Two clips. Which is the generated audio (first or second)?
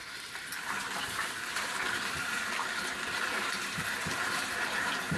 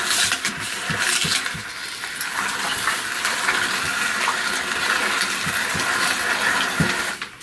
first